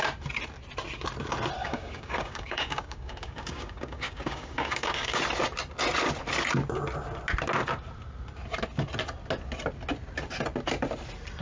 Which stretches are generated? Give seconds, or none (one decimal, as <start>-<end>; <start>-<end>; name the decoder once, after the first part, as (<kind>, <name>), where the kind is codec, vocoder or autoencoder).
1.6-5.2 (codec, DAC)